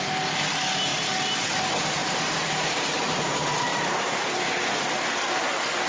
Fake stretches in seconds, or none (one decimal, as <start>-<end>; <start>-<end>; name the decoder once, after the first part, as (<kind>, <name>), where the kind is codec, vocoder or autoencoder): 0.9-1.6 (vocoder, BigVGAN v2); 2.0-3.3; 3.7-4.3